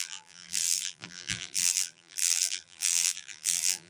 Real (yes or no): no